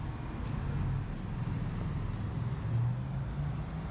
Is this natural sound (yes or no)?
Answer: yes